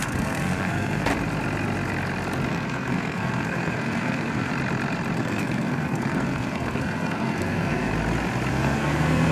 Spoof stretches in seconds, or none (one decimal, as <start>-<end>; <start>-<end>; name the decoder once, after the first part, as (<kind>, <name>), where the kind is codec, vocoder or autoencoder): 0.0-1.1 (codec, SNAC); 2.5-4.5; 5.2-7.9; 8.5-9.3